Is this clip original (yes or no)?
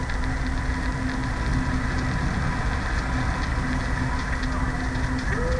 yes